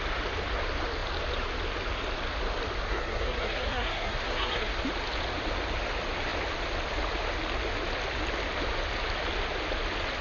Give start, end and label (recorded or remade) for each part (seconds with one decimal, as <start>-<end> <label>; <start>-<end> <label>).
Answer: 0.0-2.9 recorded; 2.9-4.8 remade; 4.8-10.2 recorded